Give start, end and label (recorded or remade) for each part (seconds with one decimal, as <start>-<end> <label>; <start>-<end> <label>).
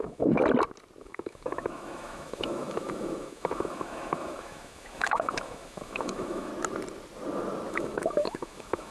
0.0-0.4 remade; 0.4-1.0 recorded; 1.0-6.5 remade; 6.5-7.7 recorded; 7.7-8.9 remade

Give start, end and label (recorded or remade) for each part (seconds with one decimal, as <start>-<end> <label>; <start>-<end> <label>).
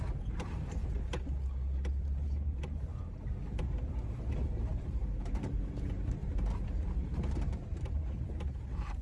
0.0-0.8 remade; 0.8-2.0 recorded; 2.0-2.9 remade; 2.9-3.9 recorded; 3.9-6.2 remade; 6.2-7.3 recorded; 7.3-9.0 remade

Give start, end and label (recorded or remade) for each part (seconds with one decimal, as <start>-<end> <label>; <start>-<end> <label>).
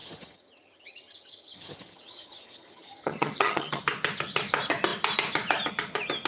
0.0-3.8 remade; 3.8-6.3 recorded